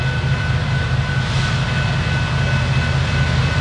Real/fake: real